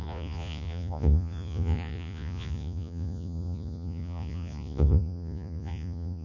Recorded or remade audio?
remade